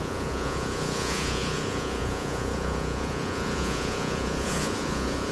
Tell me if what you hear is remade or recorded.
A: remade